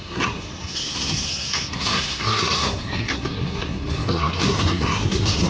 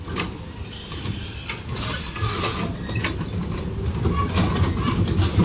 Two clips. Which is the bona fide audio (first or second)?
second